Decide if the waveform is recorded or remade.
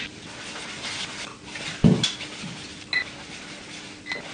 recorded